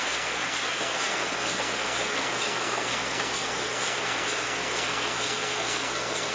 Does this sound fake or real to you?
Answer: fake